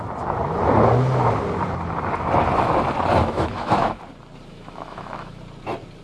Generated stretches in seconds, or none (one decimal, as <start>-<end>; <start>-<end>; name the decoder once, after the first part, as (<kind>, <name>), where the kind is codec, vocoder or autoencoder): 3.2-4.0 (autoencoder, DAC-VAE); 4.5-5.4